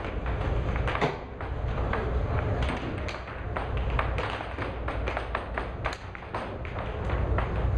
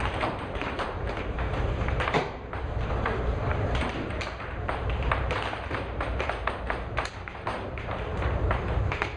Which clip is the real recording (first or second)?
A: first